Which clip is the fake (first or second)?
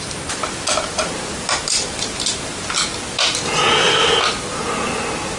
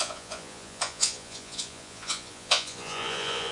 second